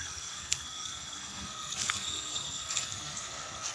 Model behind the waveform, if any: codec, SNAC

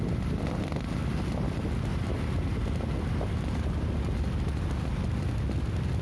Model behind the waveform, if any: none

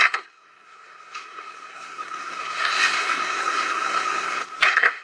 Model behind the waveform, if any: codec, SNAC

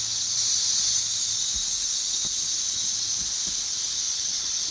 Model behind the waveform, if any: none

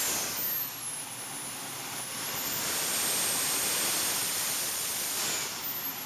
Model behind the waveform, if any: none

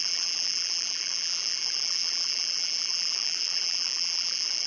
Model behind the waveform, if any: vocoder, BigVGAN v2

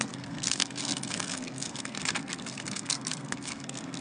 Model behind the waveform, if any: codec, SNAC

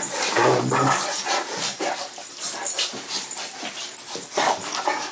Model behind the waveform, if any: none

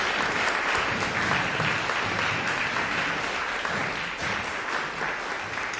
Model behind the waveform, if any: none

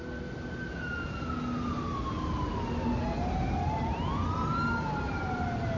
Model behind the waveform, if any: none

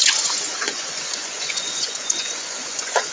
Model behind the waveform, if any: vocoder, Vocos